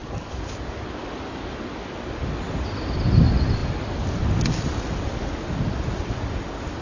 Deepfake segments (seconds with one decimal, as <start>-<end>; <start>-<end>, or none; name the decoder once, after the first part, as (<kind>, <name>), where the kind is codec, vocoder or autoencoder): none